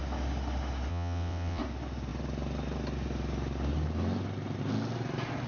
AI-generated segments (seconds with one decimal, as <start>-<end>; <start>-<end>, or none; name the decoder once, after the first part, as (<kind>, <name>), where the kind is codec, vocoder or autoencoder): 0.9-1.6 (vocoder, WaveNeXt)